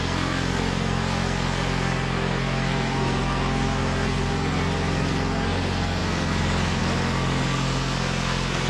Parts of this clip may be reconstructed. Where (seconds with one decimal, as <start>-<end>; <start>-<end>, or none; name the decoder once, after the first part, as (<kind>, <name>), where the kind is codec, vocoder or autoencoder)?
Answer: 0.0-8.7 (codec, SNAC)

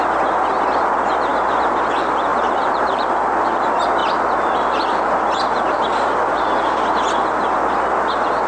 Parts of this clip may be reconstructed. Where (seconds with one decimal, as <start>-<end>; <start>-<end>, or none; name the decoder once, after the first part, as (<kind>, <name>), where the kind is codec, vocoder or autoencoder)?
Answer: 2.3-3.2 (vocoder, BigVGAN v2)

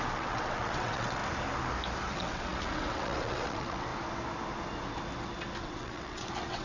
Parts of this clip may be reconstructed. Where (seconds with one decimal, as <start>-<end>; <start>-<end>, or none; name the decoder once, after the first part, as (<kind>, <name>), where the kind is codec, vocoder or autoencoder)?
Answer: 0.0-1.2 (vocoder, WaveNeXt); 2.1-3.9; 5.6-6.6